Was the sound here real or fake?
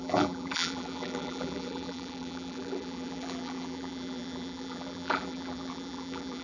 fake